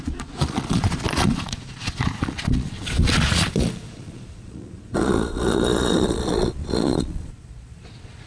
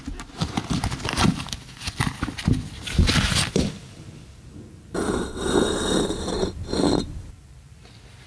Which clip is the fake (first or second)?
first